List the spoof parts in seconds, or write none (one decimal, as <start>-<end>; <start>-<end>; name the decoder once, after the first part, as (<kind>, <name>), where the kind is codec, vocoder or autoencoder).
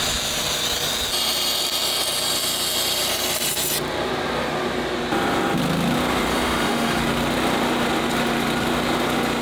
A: 6.3-7.0 (autoencoder, DAC-VAE)